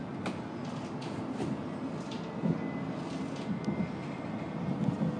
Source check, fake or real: real